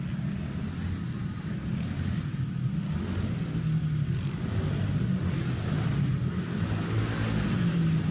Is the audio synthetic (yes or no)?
no